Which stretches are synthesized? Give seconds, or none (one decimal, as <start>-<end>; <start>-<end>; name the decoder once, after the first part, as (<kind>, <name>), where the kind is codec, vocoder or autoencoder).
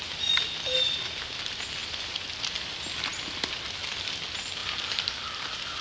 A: none